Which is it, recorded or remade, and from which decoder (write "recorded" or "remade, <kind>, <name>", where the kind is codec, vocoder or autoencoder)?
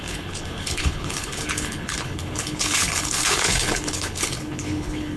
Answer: remade, codec, HILCodec